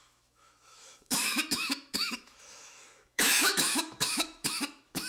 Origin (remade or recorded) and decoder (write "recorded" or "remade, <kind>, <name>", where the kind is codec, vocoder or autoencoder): remade, autoencoder, DAC-VAE